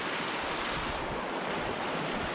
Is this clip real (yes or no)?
yes